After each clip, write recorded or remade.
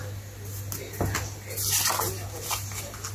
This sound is recorded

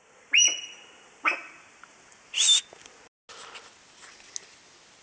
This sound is recorded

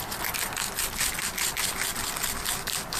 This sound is recorded